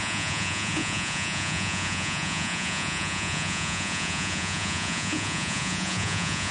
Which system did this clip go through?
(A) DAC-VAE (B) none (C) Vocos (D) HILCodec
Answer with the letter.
C